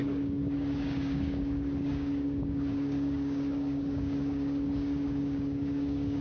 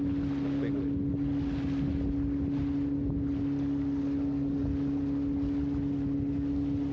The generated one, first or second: first